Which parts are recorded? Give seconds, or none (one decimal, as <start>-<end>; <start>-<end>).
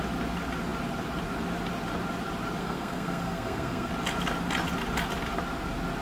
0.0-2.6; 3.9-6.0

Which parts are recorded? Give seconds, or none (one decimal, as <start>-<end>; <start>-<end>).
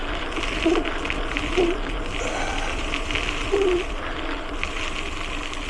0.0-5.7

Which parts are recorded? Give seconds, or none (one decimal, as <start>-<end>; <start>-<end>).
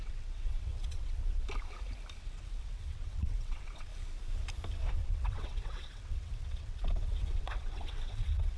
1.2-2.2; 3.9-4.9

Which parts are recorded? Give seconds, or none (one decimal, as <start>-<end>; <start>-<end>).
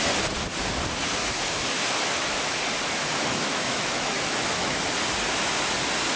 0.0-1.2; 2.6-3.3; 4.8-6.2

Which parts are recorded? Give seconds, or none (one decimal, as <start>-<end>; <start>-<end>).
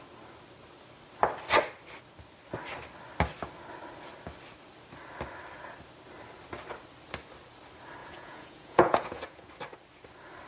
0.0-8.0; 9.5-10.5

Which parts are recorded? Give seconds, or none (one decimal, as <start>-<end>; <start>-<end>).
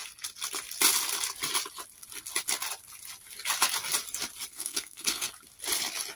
0.0-4.5; 5.3-6.2